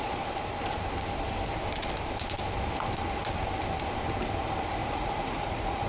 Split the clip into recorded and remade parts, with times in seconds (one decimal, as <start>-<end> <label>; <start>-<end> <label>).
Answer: 0.0-4.8 recorded; 4.8-5.9 remade